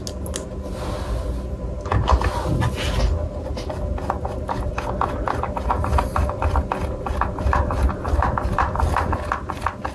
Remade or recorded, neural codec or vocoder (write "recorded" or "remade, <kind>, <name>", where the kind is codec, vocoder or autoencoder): recorded